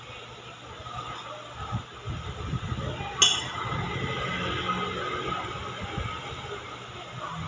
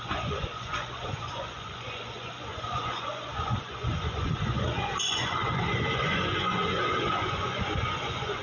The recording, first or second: first